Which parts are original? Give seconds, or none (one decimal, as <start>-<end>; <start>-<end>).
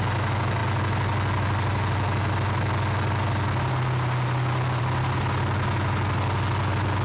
0.0-7.0